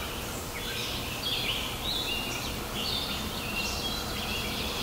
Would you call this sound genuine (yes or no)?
no